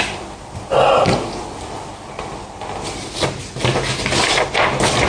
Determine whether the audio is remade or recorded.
recorded